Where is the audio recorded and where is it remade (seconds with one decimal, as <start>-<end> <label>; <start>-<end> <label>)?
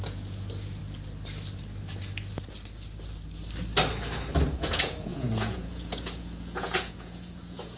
0.0-0.8 remade; 0.8-4.6 recorded; 4.6-7.8 remade